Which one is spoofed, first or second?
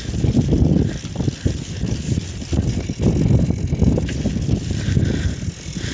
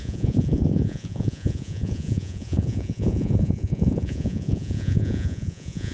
second